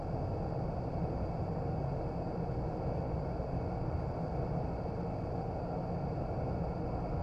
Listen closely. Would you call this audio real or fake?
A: real